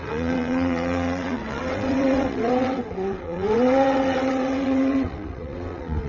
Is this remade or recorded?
remade